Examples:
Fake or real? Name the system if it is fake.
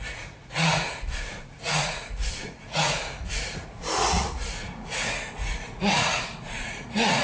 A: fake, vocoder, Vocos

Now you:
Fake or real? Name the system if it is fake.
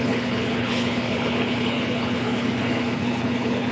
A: fake, codec, HILCodec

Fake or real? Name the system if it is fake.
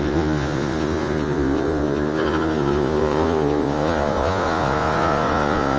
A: fake, vocoder, Vocos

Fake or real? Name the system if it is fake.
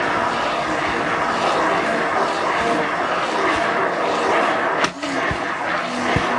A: real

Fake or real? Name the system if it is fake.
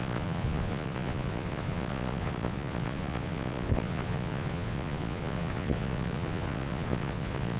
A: fake, vocoder, Vocos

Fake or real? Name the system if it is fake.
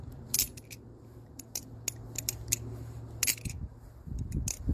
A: real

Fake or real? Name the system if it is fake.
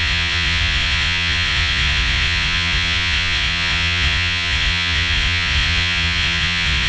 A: fake, vocoder, Vocos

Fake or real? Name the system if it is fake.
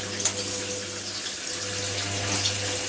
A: real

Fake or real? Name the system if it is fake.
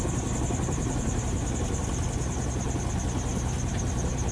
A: real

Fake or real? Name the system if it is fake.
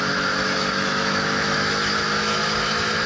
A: fake, autoencoder, DAC-VAE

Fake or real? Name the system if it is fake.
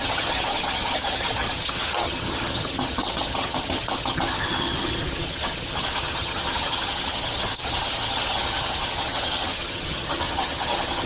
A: fake, vocoder, HiFi-GAN